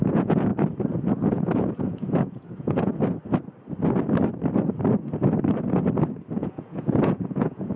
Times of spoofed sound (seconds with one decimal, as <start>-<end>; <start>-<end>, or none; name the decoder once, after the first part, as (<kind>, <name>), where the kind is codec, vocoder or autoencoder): 0.0-0.5 (vocoder, Vocos); 1.3-2.9; 6.4-7.8